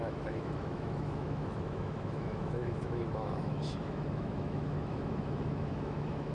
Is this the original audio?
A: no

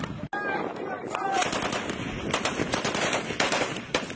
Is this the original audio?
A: yes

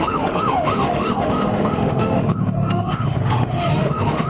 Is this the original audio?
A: no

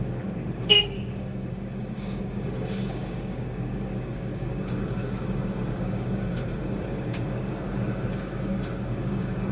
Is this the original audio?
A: no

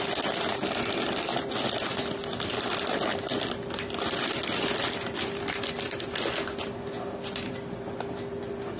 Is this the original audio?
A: yes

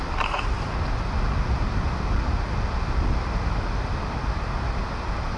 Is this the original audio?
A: yes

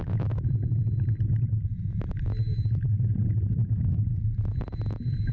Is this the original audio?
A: yes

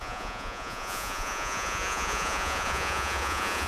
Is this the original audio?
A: no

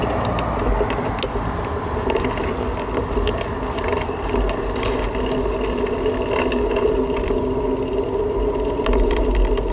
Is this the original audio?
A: yes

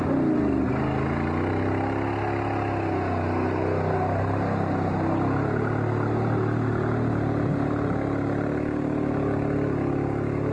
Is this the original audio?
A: yes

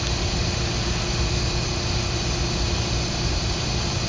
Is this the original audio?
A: yes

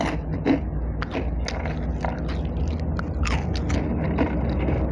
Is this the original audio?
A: yes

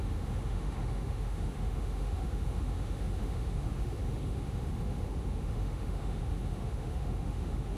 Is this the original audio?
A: no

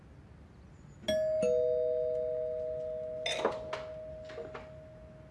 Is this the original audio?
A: yes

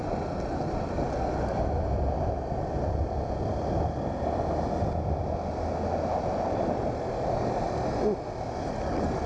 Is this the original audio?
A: yes